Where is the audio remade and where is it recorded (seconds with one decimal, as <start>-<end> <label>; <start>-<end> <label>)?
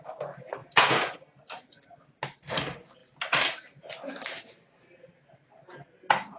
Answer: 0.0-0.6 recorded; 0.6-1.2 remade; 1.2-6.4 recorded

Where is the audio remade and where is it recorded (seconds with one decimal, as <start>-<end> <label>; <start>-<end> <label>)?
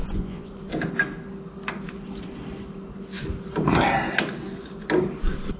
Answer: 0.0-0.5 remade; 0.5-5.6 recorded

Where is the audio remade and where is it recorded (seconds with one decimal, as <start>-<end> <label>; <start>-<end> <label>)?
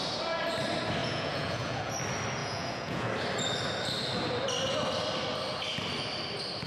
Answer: 0.0-1.0 recorded; 1.0-1.9 remade; 1.9-2.4 recorded; 2.4-3.1 remade; 3.1-6.7 recorded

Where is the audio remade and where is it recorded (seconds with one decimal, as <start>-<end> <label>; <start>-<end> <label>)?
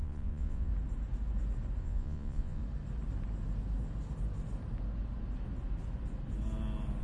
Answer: 0.0-0.7 remade; 0.7-1.8 recorded; 1.8-2.6 remade; 2.6-7.0 recorded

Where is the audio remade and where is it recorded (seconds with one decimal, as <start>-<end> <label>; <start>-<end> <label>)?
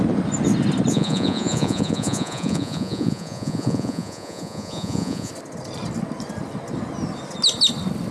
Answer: 0.0-0.9 recorded; 0.9-5.3 remade; 5.3-8.1 recorded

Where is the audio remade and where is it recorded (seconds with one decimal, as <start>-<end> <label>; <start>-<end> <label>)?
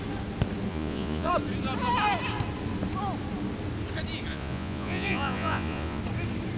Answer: 0.0-0.7 recorded; 0.7-1.3 remade; 1.3-4.3 recorded; 4.3-6.0 remade; 6.0-6.6 recorded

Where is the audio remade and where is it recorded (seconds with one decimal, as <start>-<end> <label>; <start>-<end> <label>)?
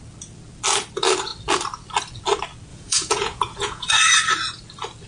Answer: 0.0-2.7 recorded; 2.7-3.9 remade; 3.9-5.1 recorded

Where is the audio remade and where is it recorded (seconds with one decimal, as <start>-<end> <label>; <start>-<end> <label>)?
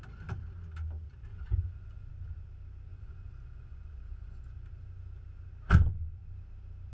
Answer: 0.0-1.3 recorded; 1.3-2.1 remade; 2.1-2.9 recorded; 2.9-4.4 remade; 4.4-6.9 recorded